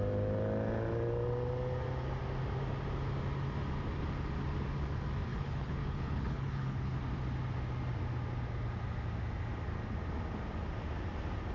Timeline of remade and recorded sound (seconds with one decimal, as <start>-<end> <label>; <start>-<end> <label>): 0.0-5.3 recorded; 5.3-7.0 remade; 7.0-11.5 recorded